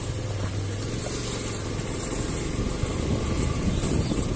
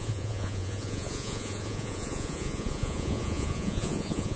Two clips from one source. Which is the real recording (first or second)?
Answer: first